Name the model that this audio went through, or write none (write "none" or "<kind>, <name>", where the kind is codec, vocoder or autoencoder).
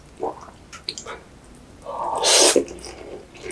none